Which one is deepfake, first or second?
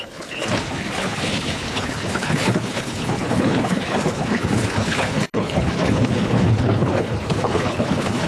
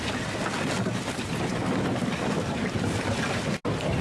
first